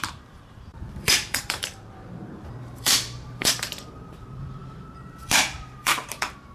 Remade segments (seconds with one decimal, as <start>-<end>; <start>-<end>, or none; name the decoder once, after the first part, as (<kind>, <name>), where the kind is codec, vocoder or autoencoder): 0.0-6.5 (vocoder, BigVGAN v2)